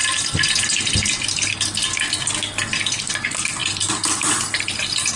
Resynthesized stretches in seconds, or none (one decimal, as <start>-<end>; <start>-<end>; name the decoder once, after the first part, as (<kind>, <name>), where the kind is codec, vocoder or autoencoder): 3.6-4.8 (vocoder, BigVGAN v2)